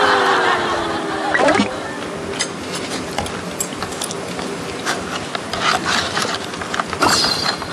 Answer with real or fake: real